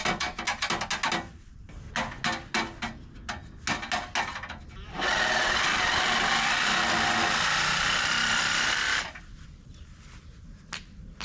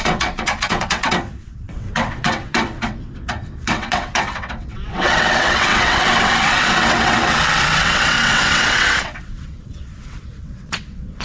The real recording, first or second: first